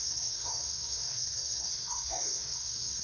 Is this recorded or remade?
remade